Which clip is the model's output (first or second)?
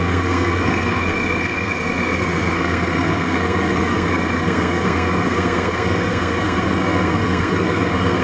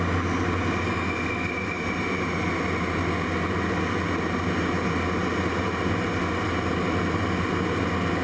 first